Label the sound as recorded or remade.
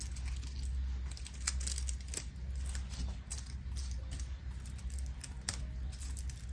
recorded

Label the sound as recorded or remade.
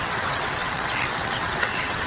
remade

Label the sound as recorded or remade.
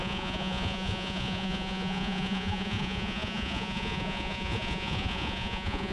remade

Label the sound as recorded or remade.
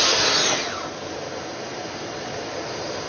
recorded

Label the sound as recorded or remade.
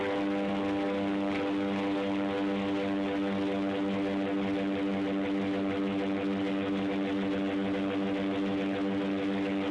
recorded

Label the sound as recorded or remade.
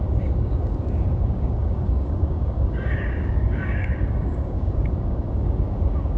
remade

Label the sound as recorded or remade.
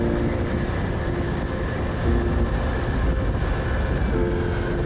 recorded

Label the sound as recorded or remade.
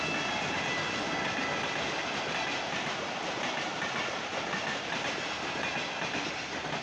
recorded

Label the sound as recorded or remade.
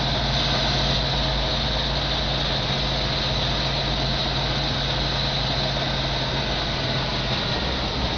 recorded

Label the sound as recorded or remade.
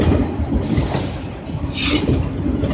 recorded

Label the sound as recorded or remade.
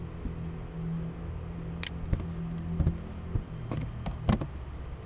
recorded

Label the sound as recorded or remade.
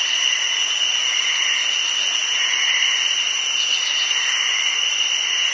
recorded